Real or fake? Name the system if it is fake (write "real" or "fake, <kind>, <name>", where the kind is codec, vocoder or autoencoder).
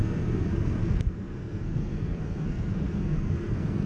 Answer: fake, codec, SNAC